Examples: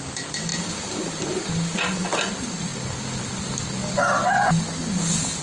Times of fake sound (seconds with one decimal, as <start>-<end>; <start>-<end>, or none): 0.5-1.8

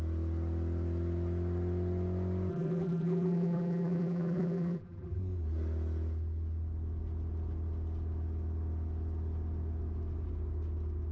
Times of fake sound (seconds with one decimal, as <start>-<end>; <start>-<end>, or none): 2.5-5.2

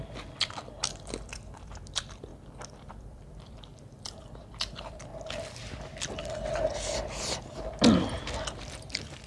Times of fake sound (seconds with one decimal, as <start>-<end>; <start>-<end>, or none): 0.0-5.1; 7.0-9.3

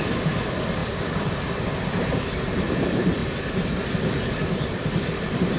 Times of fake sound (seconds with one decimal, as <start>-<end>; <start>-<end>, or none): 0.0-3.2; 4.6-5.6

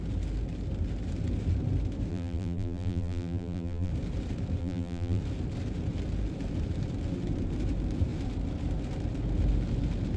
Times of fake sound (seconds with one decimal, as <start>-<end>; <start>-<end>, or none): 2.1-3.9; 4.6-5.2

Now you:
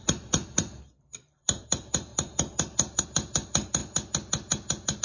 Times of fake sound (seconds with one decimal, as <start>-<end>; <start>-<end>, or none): 0.0-3.8